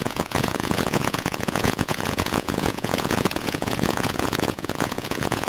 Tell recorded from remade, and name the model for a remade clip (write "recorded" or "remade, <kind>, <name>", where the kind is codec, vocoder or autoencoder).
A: remade, vocoder, Vocos